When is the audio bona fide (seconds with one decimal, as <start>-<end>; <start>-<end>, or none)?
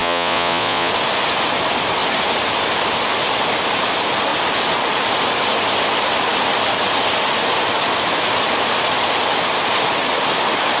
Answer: 0.9-10.8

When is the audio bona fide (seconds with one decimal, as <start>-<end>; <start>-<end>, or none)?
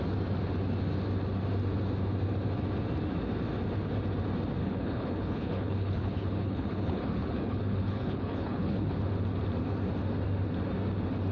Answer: 0.0-4.6; 8.9-11.3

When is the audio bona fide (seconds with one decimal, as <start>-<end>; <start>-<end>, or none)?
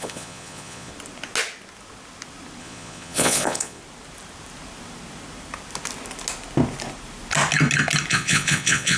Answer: 0.9-2.6; 3.8-8.1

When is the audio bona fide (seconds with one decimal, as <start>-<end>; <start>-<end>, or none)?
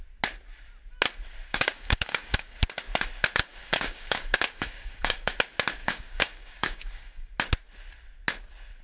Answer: 0.0-1.5; 2.6-3.5; 5.3-5.8; 7.3-8.8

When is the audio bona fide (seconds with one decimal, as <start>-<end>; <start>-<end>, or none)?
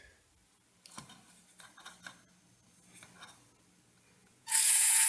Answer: 0.0-4.2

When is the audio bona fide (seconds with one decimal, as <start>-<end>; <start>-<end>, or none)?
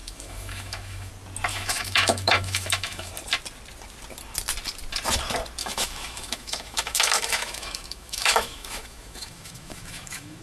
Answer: 1.1-1.5; 3.1-5.6